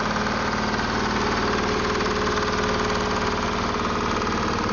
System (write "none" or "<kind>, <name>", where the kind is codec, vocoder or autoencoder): none